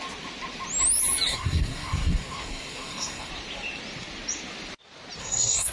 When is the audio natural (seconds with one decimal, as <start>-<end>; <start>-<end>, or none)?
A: 0.0-1.3; 3.3-5.2